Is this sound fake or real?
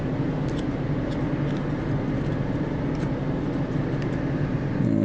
real